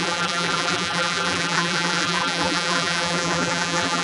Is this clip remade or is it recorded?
remade